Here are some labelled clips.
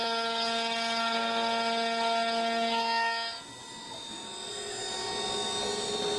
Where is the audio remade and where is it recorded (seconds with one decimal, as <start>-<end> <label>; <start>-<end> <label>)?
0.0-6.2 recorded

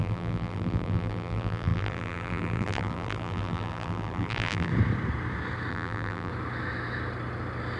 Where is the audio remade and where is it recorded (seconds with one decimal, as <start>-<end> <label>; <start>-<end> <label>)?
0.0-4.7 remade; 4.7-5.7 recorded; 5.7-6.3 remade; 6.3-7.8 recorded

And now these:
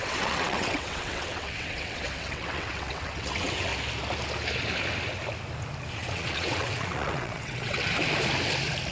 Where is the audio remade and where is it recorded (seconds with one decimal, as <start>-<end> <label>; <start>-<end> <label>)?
0.0-3.7 remade; 3.7-5.9 recorded; 5.9-7.9 remade; 7.9-8.9 recorded

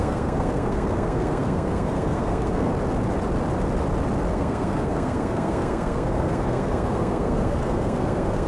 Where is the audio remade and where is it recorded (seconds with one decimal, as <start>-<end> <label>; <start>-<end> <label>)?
0.0-2.7 remade; 2.7-4.3 recorded; 4.3-8.5 remade

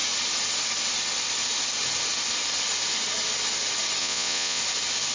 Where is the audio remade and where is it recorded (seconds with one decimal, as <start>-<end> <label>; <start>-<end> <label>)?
0.0-4.0 recorded; 4.0-4.6 remade; 4.6-5.1 recorded

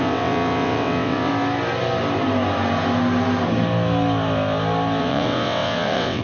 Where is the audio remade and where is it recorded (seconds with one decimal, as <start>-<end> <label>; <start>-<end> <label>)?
0.0-1.3 remade; 1.3-5.0 recorded; 5.0-6.2 remade

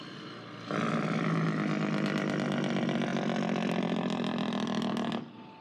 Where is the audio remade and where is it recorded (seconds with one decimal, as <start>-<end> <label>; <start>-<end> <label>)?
0.0-5.6 recorded